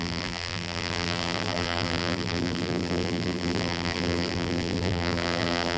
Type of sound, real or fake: fake